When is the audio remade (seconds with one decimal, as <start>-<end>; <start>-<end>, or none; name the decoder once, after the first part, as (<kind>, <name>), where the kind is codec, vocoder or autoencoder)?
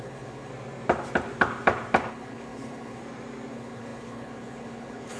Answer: 0.0-0.5 (codec, HILCodec); 2.1-3.0; 3.5-5.2